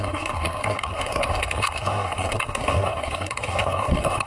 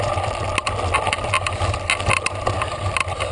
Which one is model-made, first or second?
first